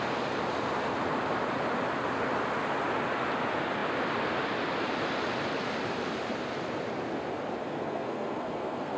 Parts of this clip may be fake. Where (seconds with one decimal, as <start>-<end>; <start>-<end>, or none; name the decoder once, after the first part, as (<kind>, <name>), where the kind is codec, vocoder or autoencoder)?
7.7-9.0 (codec, SNAC)